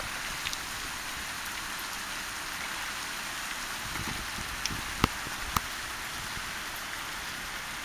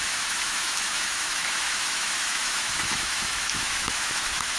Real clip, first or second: first